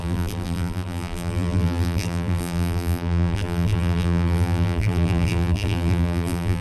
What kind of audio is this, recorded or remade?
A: remade